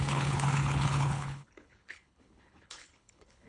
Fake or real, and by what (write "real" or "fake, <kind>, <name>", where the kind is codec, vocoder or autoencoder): fake, codec, HILCodec